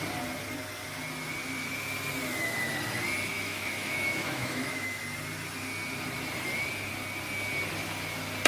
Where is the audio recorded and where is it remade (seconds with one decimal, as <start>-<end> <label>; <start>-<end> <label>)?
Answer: 0.0-3.3 recorded; 3.3-5.0 remade; 5.0-8.5 recorded